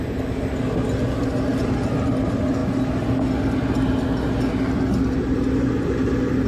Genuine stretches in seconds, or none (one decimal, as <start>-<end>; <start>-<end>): 0.0-6.5